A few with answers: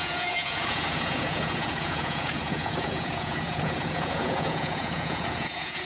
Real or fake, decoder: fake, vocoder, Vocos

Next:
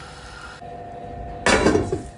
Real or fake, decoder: real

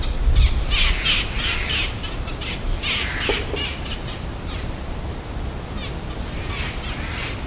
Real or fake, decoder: real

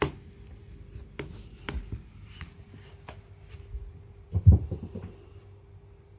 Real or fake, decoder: real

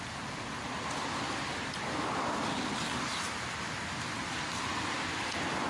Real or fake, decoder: real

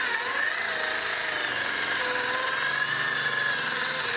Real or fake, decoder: real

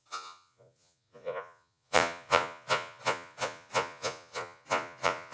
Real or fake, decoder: fake, vocoder, Vocos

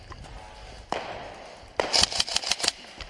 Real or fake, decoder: real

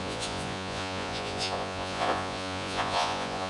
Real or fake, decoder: fake, vocoder, Vocos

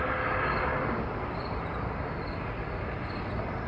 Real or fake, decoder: real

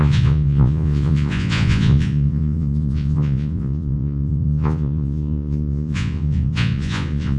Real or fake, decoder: fake, vocoder, Vocos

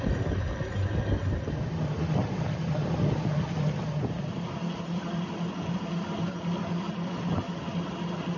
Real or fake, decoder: real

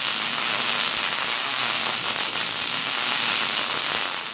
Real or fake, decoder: real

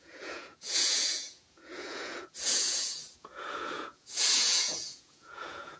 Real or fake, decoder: fake, vocoder, Vocos